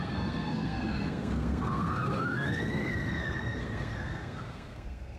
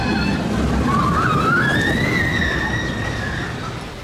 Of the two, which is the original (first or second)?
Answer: second